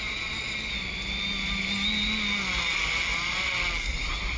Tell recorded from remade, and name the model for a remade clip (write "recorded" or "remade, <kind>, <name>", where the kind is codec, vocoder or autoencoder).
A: recorded